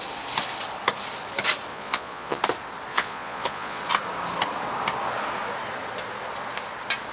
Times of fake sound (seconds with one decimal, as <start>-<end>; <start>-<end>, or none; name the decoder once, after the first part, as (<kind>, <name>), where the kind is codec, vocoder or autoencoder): 1.7-2.4 (vocoder, Vocos); 2.9-3.8